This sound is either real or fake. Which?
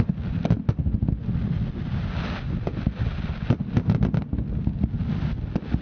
real